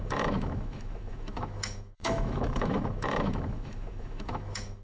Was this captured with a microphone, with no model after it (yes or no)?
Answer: no